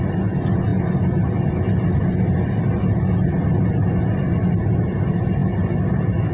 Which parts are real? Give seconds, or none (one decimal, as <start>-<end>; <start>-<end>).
0.0-6.3